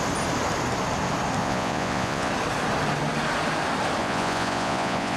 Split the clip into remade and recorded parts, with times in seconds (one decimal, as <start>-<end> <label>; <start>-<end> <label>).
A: 0.0-1.4 recorded; 1.4-2.3 remade; 2.3-4.0 recorded; 4.0-5.2 remade